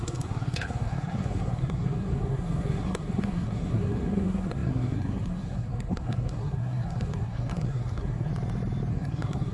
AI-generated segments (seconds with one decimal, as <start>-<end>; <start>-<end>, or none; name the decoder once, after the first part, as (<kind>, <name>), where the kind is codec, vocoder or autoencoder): 0.0-8.3 (codec, SNAC); 8.9-9.5